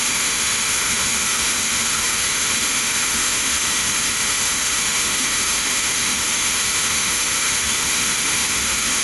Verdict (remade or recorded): remade